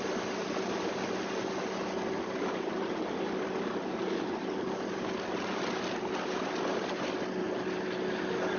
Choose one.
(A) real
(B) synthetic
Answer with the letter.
A